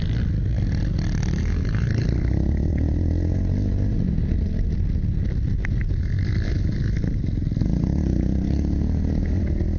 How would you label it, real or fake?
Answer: real